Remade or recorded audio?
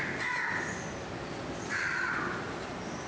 recorded